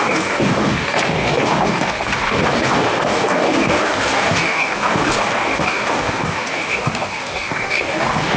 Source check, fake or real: fake